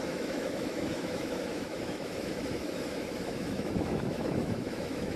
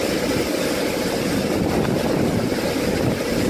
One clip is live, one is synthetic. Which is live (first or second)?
second